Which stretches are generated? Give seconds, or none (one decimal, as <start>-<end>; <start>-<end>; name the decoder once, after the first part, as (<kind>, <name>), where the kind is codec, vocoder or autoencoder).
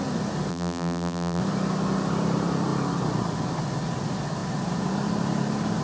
0.5-1.4 (vocoder, BigVGAN v2)